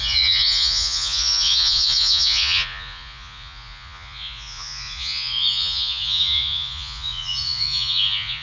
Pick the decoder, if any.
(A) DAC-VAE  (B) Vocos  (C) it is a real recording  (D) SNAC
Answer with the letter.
B